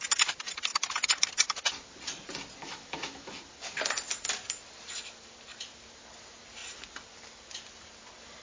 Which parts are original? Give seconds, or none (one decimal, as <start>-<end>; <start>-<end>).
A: 0.0-2.6; 3.4-8.4